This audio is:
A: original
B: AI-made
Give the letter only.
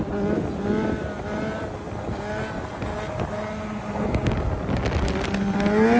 A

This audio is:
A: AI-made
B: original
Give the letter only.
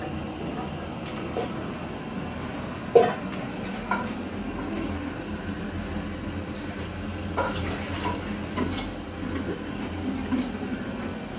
B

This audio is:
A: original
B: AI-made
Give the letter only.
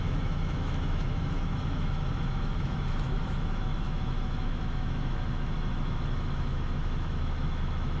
B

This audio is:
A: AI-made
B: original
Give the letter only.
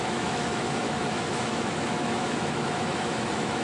A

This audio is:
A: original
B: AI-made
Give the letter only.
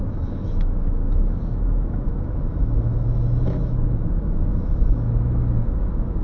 B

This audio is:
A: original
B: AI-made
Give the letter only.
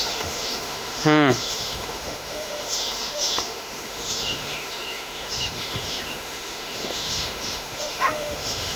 B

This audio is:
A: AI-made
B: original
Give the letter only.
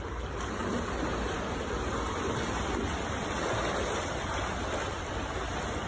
B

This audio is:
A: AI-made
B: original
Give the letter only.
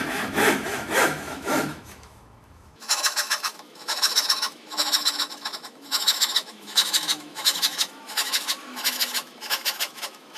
A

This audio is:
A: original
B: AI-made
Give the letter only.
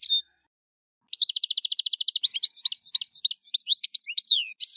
A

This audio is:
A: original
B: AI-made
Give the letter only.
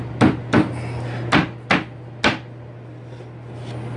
A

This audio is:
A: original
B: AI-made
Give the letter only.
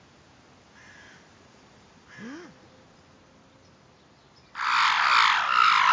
A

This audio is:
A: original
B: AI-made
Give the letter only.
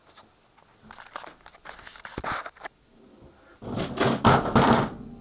A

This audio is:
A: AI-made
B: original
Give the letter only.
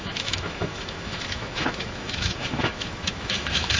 A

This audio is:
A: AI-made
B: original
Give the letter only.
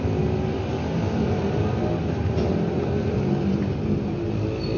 B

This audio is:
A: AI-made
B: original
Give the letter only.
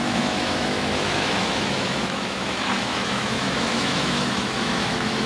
A